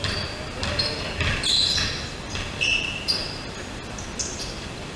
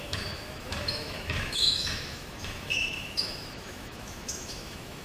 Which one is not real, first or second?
second